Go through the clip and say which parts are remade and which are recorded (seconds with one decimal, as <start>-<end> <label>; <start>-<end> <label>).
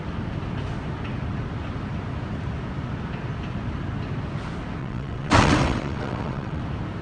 0.0-4.8 recorded; 4.8-6.6 remade; 6.6-7.0 recorded